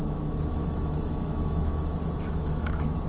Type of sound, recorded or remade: remade